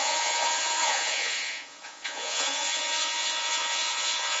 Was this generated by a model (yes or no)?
yes